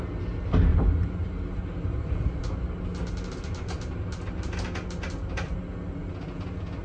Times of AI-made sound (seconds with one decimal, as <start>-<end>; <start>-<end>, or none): 0.7-2.4